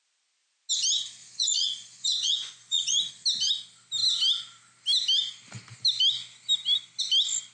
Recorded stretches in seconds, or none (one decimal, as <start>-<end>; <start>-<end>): 0.0-1.2; 3.1-7.5